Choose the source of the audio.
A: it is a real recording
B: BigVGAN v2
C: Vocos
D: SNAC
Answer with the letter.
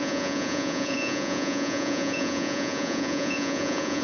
C